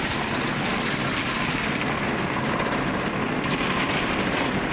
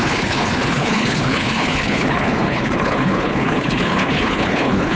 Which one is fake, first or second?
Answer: second